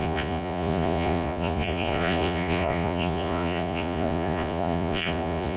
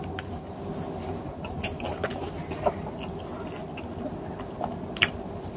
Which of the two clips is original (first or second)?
second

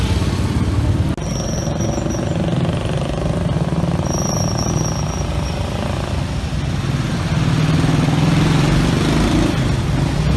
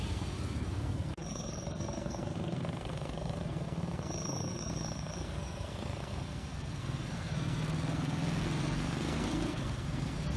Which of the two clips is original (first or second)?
first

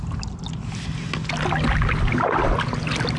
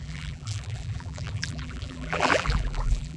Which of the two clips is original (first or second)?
first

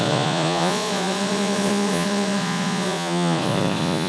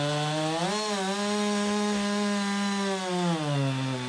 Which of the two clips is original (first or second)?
second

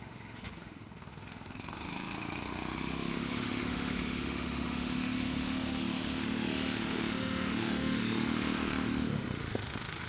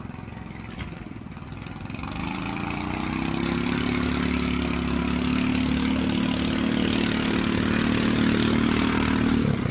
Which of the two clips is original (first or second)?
second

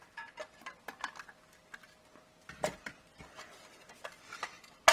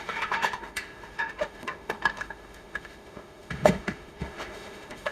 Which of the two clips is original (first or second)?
first